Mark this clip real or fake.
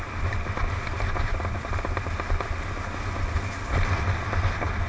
real